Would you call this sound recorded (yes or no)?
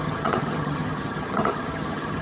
no